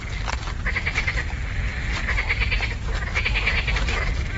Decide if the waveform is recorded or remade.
recorded